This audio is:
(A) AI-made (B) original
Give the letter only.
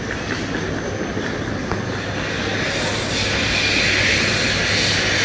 B